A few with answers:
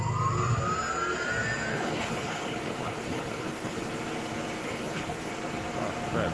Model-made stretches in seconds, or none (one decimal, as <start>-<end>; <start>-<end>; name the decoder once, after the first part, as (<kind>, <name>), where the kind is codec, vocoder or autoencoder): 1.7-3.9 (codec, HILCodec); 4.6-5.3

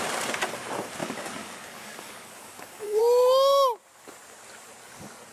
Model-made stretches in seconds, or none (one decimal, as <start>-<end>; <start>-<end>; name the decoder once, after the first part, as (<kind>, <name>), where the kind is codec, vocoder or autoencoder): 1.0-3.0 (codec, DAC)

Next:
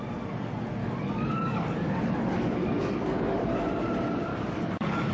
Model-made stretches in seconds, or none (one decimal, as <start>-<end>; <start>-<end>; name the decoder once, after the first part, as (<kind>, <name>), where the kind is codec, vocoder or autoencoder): 0.8-3.5 (codec, DAC); 4.3-5.1

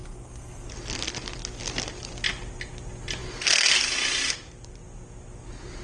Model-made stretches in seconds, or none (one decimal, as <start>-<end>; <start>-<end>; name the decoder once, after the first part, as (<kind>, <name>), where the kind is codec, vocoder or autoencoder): 0.0-0.7 (codec, SNAC)

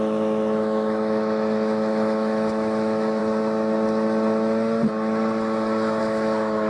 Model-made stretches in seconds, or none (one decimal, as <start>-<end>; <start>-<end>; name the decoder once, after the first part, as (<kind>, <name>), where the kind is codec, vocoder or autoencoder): 0.0-3.2 (autoencoder, DAC-VAE); 6.0-6.7

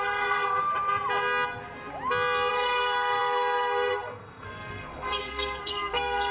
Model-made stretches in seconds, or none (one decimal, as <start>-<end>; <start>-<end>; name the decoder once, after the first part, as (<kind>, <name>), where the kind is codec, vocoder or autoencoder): 0.0-0.7 (codec, SNAC); 2.5-6.3

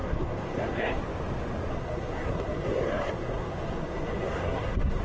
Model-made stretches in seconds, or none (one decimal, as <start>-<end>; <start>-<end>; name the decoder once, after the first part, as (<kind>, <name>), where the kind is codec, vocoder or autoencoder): 0.0-1.0 (codec, SNAC); 1.7-5.0